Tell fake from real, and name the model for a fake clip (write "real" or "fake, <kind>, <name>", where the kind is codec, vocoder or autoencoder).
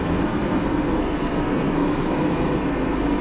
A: fake, codec, SNAC